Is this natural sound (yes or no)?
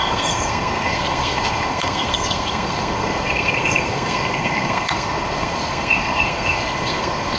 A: no